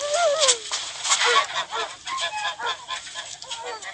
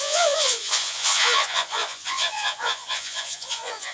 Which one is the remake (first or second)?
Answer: second